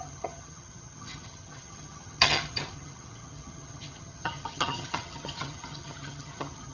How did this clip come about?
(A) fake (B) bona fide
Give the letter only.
A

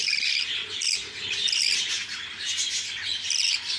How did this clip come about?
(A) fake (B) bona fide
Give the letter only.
B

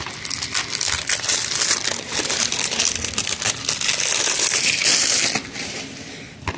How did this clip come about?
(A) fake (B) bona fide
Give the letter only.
B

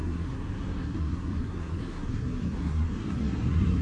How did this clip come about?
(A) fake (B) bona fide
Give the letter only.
A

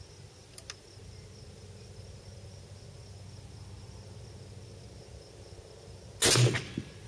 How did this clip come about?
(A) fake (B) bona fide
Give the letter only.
B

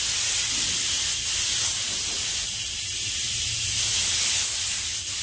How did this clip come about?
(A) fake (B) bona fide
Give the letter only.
B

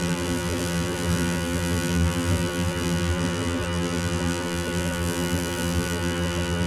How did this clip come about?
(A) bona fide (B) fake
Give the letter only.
B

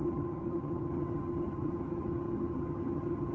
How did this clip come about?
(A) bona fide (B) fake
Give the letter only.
B